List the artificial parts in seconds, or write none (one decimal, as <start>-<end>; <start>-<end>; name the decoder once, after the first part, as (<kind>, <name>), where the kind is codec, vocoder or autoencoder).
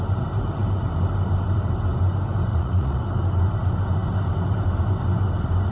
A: 2.5-3.0 (vocoder, Vocos)